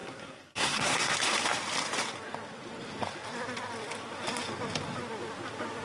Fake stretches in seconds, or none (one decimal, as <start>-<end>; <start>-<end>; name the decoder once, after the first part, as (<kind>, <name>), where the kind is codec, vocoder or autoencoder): 0.0-1.1 (codec, SNAC)